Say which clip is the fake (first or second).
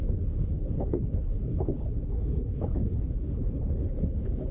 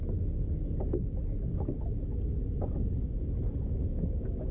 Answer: first